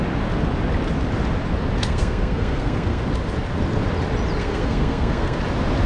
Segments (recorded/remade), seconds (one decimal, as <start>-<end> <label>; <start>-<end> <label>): 0.0-1.8 recorded; 1.8-3.0 remade; 3.0-4.4 recorded; 4.4-5.4 remade; 5.4-5.9 recorded